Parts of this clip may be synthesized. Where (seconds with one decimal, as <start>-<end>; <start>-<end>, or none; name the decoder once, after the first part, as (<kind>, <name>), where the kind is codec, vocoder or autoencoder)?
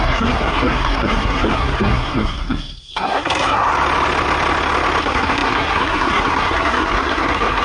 0.0-3.7 (codec, SNAC); 5.0-7.6